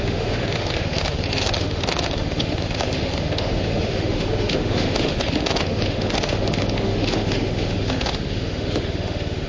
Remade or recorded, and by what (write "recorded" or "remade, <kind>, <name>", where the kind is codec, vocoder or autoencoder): remade, autoencoder, DAC-VAE